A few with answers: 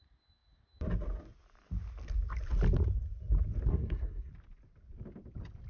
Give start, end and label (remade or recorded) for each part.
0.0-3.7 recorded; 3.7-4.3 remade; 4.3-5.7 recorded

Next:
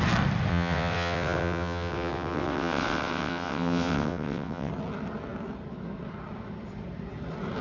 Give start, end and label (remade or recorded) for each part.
0.0-0.5 recorded; 0.5-4.7 remade; 4.7-7.6 recorded

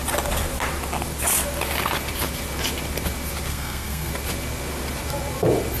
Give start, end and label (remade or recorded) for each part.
0.0-3.5 recorded; 3.5-4.1 remade; 4.1-5.8 recorded